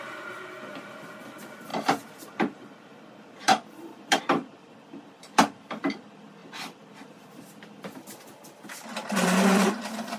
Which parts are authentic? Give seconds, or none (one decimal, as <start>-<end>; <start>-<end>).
none